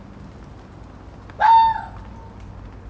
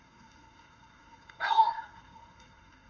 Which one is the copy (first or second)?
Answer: second